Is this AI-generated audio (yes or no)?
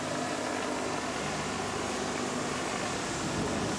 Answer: no